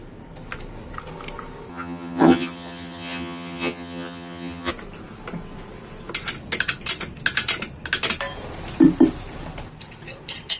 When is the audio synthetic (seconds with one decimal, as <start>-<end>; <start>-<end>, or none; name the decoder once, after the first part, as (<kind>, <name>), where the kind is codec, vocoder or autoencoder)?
1.7-4.7 (vocoder, HiFi-GAN)